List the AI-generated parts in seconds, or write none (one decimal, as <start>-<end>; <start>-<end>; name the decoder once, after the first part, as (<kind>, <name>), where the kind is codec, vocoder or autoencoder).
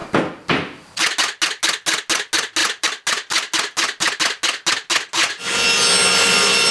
none